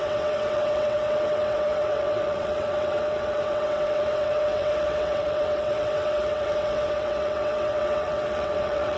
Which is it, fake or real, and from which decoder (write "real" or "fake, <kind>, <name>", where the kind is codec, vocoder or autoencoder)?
fake, vocoder, WaveNeXt